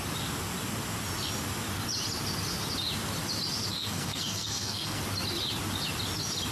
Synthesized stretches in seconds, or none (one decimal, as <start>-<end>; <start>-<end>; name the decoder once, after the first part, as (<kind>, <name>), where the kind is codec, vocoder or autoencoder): 3.7-5.0 (codec, SNAC)